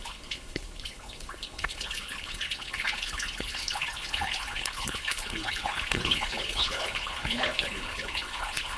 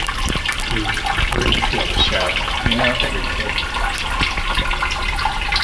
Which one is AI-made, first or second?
first